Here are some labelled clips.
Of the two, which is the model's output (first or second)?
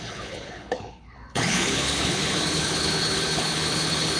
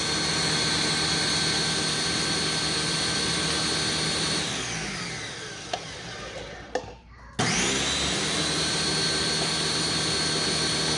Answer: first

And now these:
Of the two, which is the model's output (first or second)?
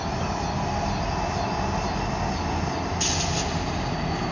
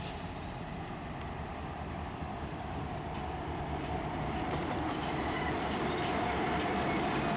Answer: second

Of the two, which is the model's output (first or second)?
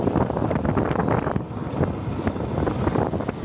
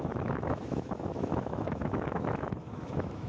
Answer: second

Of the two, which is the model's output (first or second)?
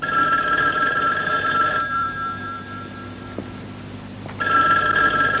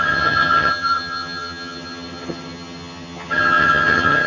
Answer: second